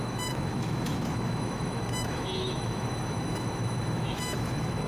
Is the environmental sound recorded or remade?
remade